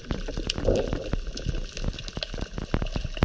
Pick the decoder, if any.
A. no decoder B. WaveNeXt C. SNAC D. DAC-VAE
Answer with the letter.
A